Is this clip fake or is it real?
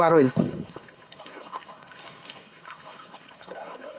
fake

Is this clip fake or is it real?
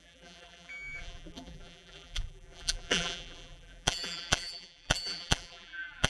fake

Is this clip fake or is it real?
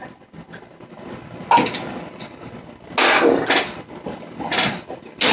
real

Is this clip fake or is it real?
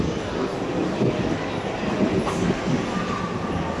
real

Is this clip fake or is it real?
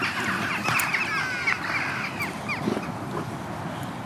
real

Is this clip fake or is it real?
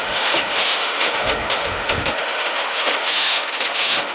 fake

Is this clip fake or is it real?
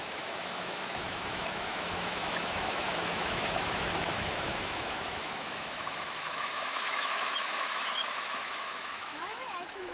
fake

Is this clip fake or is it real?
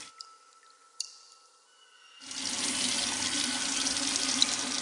real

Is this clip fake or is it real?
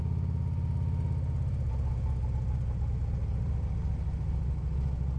real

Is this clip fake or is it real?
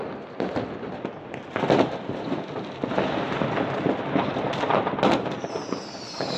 real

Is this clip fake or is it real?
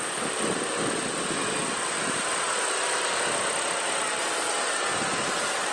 fake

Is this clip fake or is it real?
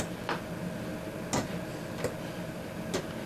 real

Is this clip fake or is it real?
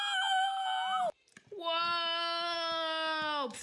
real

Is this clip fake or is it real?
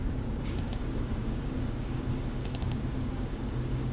fake